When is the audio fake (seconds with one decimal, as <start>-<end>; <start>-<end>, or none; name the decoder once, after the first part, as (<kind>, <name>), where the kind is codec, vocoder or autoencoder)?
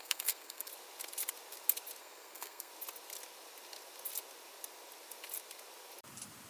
0.0-0.7 (codec, SNAC); 2.0-2.7